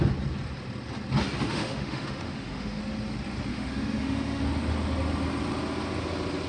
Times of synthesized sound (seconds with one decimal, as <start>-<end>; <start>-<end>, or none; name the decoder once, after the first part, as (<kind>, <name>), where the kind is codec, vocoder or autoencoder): 1.5-2.8 (autoencoder, DAC-VAE); 3.5-4.4